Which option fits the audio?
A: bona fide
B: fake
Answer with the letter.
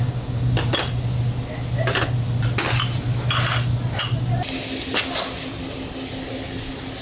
A